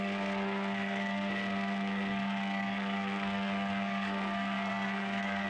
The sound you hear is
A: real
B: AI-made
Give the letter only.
B